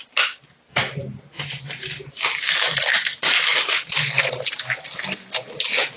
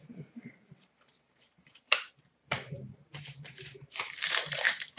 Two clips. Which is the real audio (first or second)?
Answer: first